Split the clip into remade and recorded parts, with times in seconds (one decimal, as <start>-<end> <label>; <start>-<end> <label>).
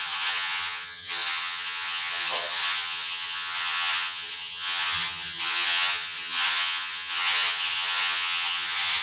0.0-9.0 remade